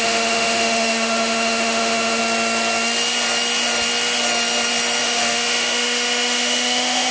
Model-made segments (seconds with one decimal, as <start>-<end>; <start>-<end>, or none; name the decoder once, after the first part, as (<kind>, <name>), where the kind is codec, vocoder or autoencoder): 0.0-2.2 (autoencoder, DAC-VAE); 5.0-7.1